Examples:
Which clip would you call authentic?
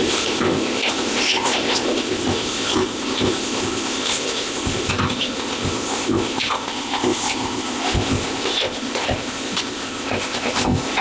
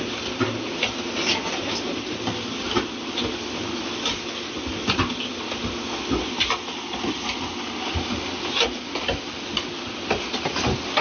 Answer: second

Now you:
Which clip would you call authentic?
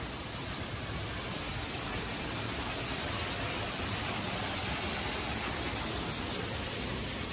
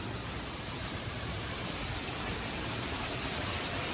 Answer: first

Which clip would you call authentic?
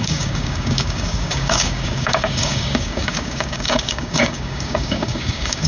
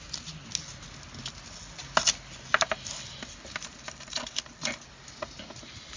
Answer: second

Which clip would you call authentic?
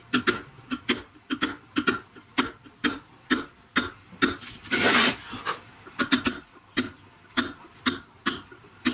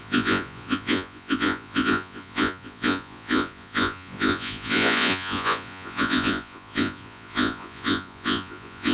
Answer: first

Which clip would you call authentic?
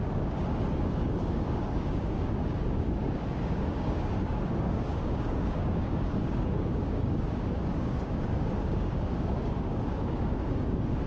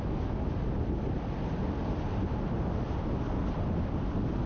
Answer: second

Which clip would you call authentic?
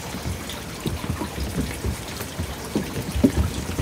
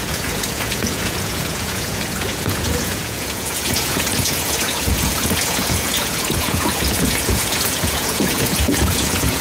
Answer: first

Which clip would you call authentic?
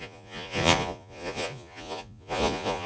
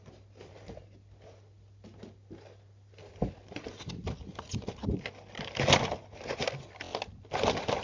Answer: second